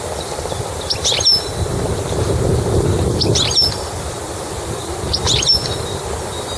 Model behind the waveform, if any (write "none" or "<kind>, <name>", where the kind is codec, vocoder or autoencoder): vocoder, BigVGAN v2